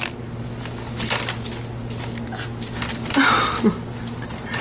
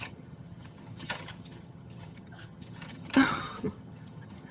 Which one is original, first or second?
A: first